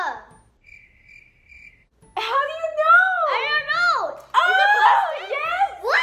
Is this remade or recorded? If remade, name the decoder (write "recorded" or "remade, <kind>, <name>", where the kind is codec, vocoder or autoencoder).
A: recorded